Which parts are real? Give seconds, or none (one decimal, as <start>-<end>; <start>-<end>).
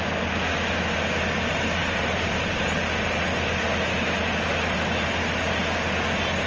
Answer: 0.0-1.8; 2.7-6.5